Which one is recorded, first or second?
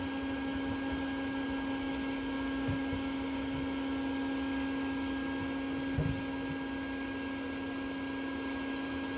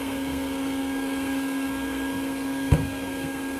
first